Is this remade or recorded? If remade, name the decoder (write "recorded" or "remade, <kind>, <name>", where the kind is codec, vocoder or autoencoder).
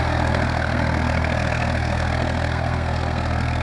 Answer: remade, codec, SNAC